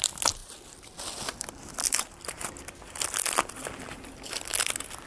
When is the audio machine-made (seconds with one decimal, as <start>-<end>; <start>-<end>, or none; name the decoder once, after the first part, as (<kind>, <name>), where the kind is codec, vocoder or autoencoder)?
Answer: none